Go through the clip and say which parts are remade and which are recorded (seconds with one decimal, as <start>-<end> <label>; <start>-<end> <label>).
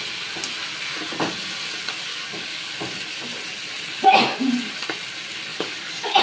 0.0-2.1 recorded; 2.1-2.7 remade; 2.7-5.5 recorded; 5.5-6.2 remade